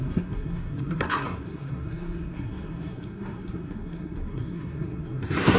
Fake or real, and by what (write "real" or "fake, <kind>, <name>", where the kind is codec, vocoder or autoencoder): fake, codec, SNAC